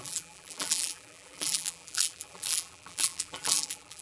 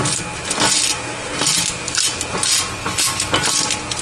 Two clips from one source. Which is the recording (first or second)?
second